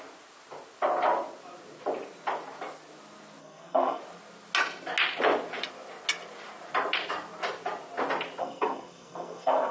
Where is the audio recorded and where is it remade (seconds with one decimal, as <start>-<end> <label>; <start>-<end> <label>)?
0.0-3.4 recorded; 3.4-4.0 remade; 4.0-8.4 recorded; 8.4-9.7 remade